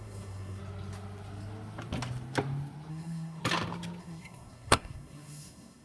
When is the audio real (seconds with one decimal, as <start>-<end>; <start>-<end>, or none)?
0.6-2.9; 3.4-4.0